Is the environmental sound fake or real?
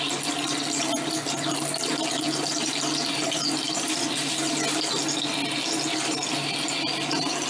real